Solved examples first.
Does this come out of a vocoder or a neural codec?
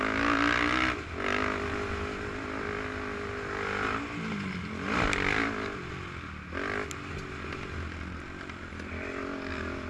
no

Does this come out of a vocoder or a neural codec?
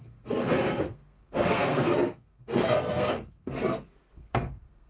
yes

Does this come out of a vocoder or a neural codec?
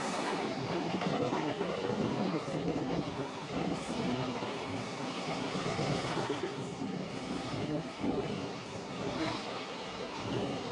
yes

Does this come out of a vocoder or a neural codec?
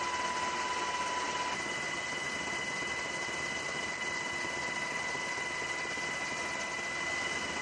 no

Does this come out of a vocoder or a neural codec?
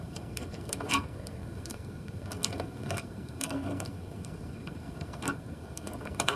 yes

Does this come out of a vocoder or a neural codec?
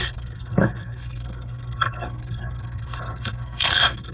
yes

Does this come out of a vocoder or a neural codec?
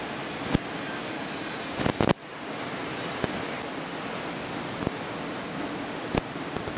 no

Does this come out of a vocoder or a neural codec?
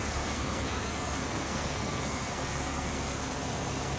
yes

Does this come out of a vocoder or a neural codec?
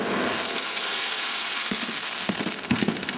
yes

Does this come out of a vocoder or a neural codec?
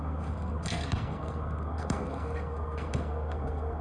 yes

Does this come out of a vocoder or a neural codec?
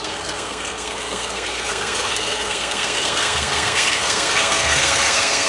yes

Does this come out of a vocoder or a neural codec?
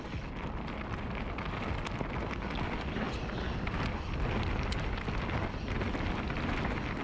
no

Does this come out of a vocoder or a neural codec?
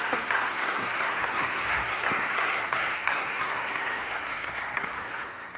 yes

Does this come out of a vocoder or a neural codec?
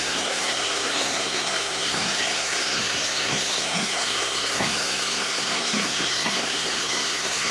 yes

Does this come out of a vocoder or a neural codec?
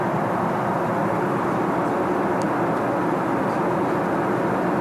no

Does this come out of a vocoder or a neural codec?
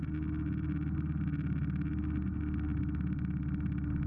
no